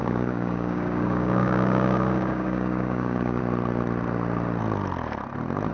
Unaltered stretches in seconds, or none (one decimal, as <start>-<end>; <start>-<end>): 3.4-5.7